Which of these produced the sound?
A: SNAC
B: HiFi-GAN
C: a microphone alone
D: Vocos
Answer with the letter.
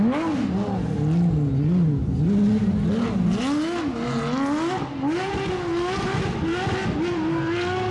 C